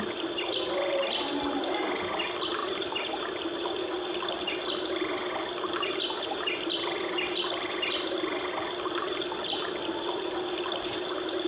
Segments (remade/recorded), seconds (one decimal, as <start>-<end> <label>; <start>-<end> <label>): 0.0-2.6 recorded; 2.6-3.4 remade; 3.4-11.5 recorded